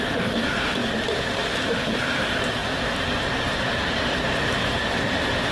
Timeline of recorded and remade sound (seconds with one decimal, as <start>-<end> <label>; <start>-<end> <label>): 0.0-0.8 remade; 0.8-1.8 recorded; 1.8-5.5 remade